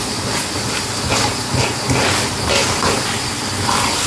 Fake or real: real